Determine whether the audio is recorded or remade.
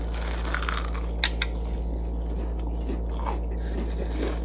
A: recorded